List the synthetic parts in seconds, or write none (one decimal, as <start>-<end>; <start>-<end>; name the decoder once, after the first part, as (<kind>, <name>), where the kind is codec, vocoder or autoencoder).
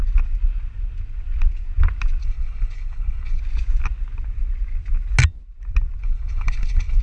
2.2-3.4 (codec, HILCodec); 6.0-7.0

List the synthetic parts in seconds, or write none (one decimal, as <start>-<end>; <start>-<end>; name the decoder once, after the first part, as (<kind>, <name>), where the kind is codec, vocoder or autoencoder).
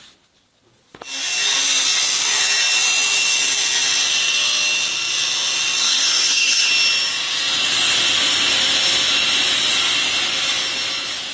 5.8-6.7 (codec, SNAC)